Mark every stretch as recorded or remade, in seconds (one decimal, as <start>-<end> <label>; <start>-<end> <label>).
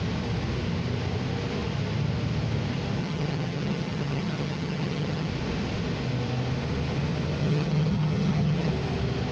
0.0-3.0 recorded; 3.0-5.3 remade; 5.3-7.4 recorded; 7.4-8.7 remade; 8.7-9.3 recorded